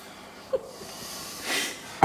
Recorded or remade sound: recorded